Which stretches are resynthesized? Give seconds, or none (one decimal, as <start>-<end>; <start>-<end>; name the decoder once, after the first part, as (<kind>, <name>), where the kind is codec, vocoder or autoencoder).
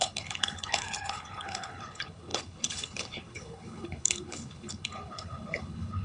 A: 0.0-6.0 (codec, HILCodec)